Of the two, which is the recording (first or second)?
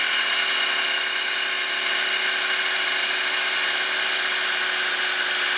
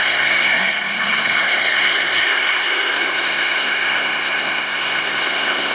first